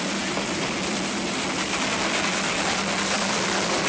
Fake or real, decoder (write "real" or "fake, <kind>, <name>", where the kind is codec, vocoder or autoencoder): real